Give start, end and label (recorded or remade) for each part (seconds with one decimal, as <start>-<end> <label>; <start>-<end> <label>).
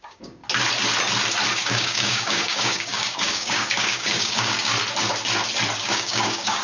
0.0-0.4 remade; 0.4-1.5 recorded; 1.5-4.7 remade; 4.7-5.8 recorded; 5.8-6.6 remade